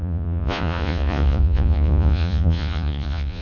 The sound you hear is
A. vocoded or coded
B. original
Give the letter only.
A